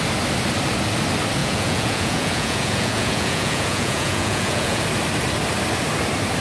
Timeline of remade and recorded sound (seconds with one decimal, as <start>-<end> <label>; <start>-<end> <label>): 0.0-1.4 recorded; 1.4-4.8 remade; 4.8-6.4 recorded